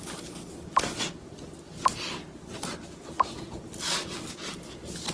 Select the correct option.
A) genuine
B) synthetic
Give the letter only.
A